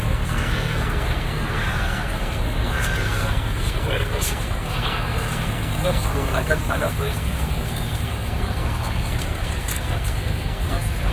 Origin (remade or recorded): remade